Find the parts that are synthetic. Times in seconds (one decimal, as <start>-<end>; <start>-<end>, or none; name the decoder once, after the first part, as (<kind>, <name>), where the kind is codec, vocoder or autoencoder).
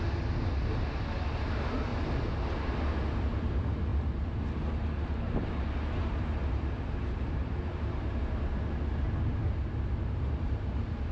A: 1.9-2.9 (vocoder, BigVGAN v2)